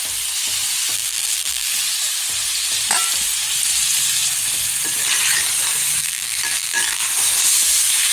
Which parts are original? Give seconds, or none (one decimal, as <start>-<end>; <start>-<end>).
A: 0.0-0.9; 1.7-6.0; 7.0-8.1